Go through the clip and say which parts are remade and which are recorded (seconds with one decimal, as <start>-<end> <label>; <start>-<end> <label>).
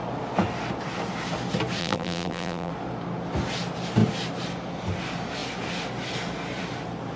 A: 0.0-1.8 recorded; 1.8-2.7 remade; 2.7-7.2 recorded